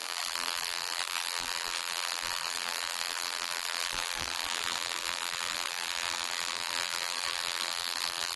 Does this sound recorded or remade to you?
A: remade